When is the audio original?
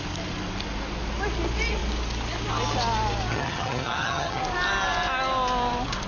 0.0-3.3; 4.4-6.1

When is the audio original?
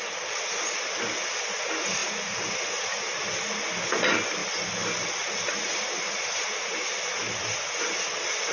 0.0-8.5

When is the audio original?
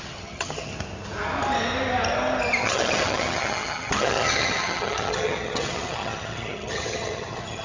0.7-2.6